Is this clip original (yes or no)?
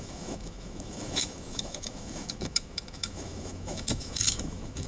no